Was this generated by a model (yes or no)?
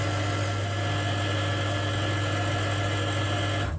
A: no